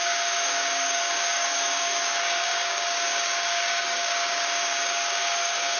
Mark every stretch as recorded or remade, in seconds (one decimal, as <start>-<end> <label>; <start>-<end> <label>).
0.0-5.8 remade